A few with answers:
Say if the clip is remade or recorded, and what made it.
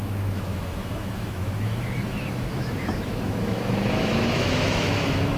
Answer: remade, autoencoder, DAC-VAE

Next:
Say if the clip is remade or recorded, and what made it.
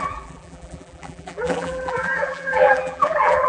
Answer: remade, vocoder, BigVGAN v2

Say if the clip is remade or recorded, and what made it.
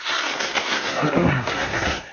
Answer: remade, codec, SNAC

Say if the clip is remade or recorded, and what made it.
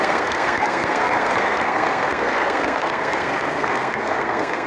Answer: remade, codec, SNAC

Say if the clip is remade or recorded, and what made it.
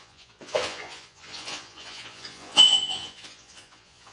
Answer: remade, vocoder, Vocos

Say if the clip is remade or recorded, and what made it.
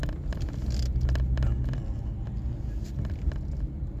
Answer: recorded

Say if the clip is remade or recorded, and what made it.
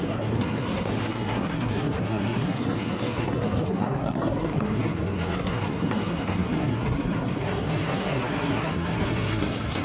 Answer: remade, codec, SNAC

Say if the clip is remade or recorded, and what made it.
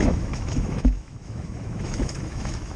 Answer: remade, autoencoder, DAC-VAE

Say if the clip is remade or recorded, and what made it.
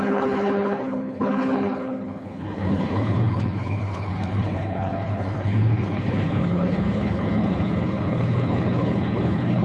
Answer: remade, codec, HILCodec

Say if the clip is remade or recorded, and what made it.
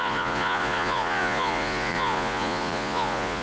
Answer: remade, vocoder, Vocos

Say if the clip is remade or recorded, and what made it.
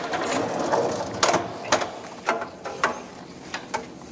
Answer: recorded